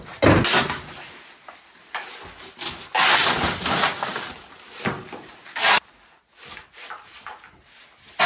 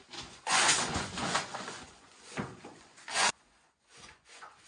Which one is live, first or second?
first